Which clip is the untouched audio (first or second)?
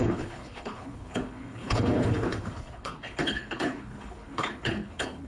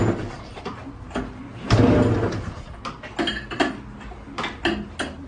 second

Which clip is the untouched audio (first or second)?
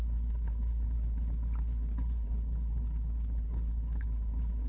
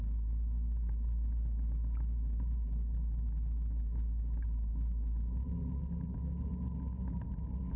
second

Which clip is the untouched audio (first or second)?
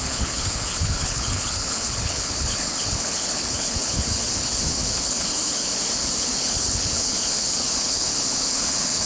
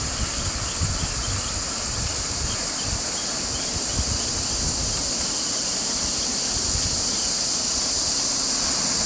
second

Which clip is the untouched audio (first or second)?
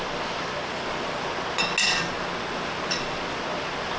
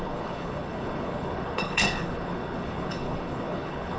first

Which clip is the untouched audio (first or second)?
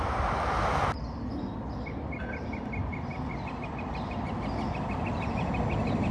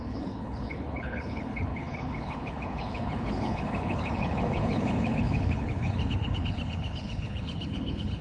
first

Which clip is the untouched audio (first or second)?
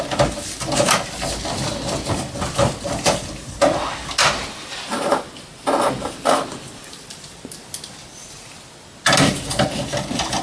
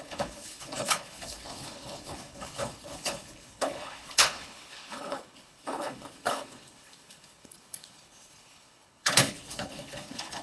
first